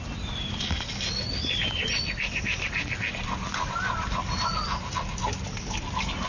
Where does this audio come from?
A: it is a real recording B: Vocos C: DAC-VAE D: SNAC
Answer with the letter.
A